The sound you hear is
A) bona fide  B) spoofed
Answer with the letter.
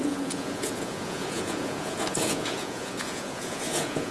B